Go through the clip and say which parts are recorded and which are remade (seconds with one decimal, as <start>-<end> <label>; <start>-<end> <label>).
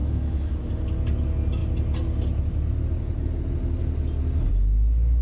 0.0-0.7 remade; 0.7-5.2 recorded